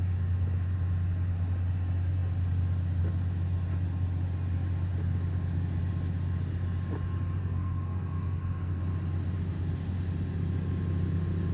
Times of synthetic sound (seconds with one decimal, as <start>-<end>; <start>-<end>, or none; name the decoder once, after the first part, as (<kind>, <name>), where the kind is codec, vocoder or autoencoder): 7.4-8.8 (codec, SNAC)